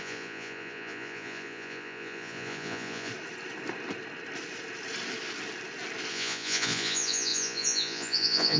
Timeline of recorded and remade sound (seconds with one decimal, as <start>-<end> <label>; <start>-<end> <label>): 0.0-3.1 remade; 3.1-6.1 recorded; 6.1-8.6 remade